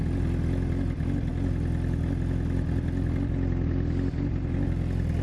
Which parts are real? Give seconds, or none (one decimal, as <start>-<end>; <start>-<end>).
0.0-5.2